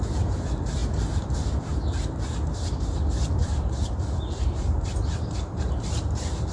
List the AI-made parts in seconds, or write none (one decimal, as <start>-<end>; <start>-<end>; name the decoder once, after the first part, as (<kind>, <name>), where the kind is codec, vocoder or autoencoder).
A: 3.4-5.0 (vocoder, BigVGAN v2)